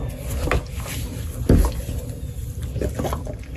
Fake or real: real